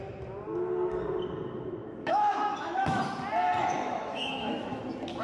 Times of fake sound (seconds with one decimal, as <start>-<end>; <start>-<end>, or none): 1.8-3.0; 3.6-4.8